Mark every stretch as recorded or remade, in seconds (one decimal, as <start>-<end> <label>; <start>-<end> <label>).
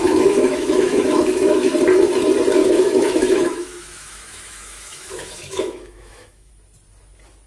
0.0-1.7 remade; 1.7-2.6 recorded; 2.6-6.5 remade; 6.5-7.5 recorded